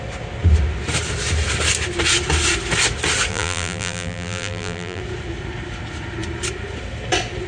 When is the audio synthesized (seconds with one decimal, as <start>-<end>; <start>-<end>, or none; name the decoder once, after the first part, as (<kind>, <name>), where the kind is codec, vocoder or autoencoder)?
3.3-5.0 (vocoder, BigVGAN v2)